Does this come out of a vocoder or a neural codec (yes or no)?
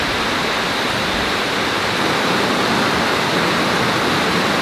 no